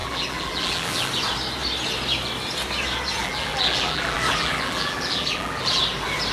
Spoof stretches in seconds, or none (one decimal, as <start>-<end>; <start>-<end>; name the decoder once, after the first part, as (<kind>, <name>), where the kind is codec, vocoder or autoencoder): 0.0-1.1 (vocoder, BigVGAN v2); 3.2-5.8